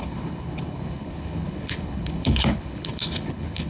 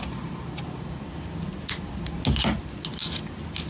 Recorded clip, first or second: second